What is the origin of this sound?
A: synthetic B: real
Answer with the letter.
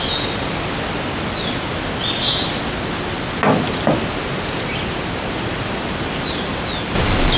B